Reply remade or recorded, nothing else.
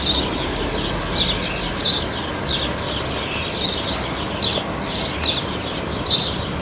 recorded